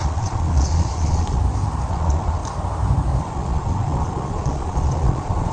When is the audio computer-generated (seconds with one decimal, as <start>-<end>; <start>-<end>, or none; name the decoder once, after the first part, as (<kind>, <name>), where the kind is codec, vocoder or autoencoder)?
0.0-1.4 (vocoder, Vocos); 1.9-2.4; 3.2-5.5